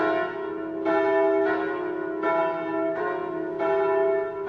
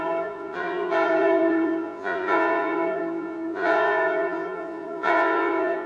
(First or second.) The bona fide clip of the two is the first